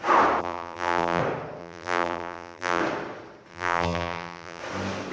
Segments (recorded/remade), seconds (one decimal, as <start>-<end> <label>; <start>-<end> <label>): 0.0-0.4 recorded; 0.4-1.2 remade; 1.2-1.6 recorded; 1.6-2.8 remade; 2.8-3.5 recorded; 3.5-4.6 remade; 4.6-5.1 recorded